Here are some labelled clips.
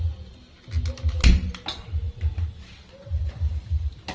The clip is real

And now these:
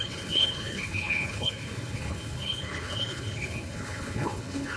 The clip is fake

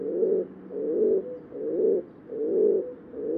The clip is real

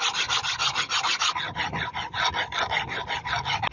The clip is real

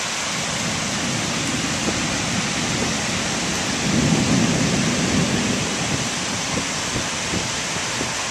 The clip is real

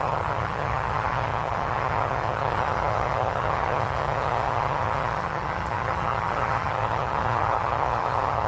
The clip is fake